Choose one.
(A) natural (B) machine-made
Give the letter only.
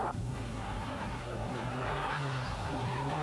B